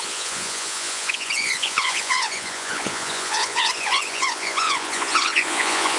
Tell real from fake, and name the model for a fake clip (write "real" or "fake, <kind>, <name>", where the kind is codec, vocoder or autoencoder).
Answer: fake, vocoder, Vocos